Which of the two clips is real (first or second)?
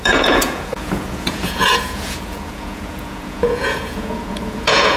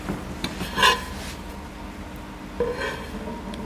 second